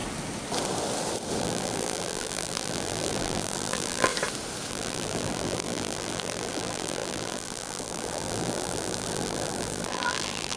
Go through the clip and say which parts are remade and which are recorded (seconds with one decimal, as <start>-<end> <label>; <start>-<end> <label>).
0.0-1.4 recorded; 1.4-4.1 remade; 4.1-4.7 recorded; 4.7-10.6 remade